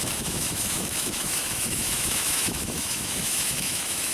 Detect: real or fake fake